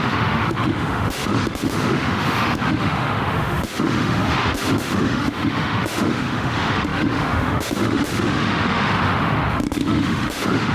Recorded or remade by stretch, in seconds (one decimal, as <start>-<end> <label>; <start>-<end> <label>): 0.0-10.7 remade